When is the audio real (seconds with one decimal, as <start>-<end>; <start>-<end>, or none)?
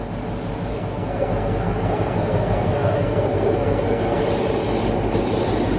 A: 0.0-0.7; 4.2-5.8